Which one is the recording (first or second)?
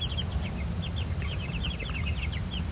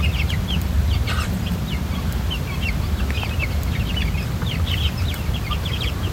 first